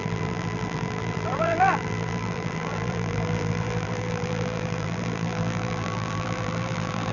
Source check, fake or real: fake